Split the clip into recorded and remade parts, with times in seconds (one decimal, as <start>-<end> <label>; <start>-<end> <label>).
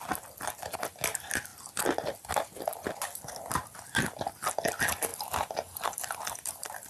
0.0-5.1 recorded; 5.1-6.9 remade